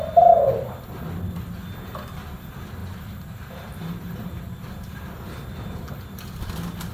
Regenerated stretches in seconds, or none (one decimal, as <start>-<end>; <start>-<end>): 2.8-4.3